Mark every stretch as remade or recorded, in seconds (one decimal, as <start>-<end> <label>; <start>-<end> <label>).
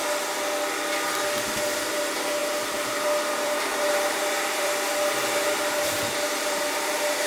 0.0-1.9 recorded; 1.9-7.3 remade